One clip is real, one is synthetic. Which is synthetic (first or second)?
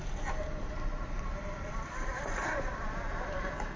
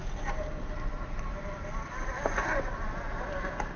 first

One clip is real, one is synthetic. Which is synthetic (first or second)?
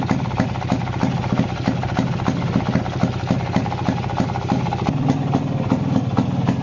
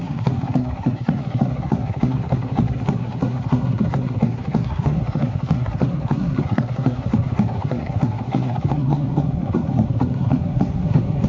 second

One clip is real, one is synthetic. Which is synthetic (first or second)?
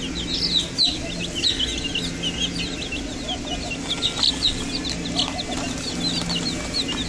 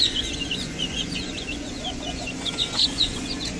second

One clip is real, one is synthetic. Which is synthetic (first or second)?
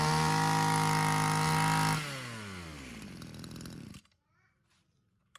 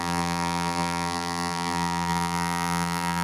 second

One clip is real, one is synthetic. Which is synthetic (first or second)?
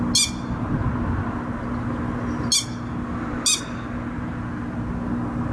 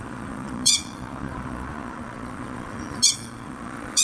second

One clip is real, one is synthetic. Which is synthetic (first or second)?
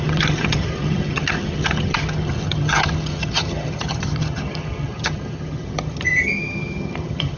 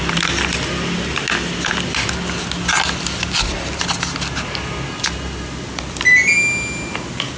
first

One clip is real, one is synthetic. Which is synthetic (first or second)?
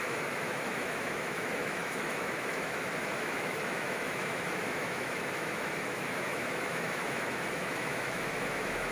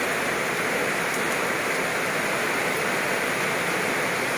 first